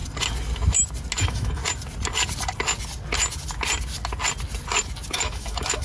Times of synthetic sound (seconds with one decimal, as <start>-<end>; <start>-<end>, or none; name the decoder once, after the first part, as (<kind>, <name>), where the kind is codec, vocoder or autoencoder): 1.2-1.6 (autoencoder, DAC-VAE); 5.1-5.8